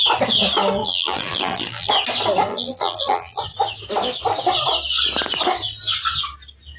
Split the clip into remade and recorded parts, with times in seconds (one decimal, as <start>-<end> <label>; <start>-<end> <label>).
0.0-0.8 recorded; 0.8-1.9 remade; 1.9-2.5 recorded; 2.5-3.4 remade; 3.4-6.8 recorded